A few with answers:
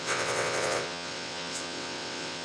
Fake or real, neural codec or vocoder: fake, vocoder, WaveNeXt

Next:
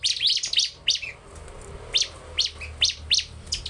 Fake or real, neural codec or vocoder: real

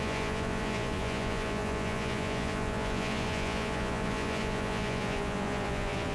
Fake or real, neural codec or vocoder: fake, vocoder, Vocos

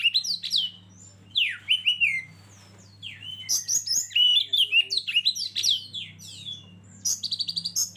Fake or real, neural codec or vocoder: real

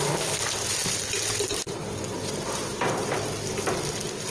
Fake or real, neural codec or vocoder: real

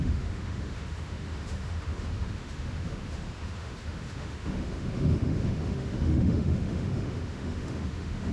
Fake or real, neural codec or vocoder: fake, autoencoder, DAC-VAE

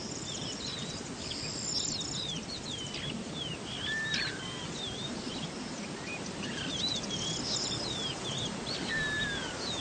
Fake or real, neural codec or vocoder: real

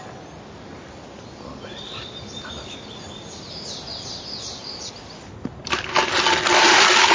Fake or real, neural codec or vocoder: real